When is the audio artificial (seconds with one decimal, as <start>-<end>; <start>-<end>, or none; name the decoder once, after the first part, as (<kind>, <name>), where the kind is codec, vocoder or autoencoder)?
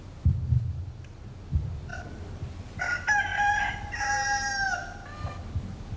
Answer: 1.9-2.8 (vocoder, BigVGAN v2)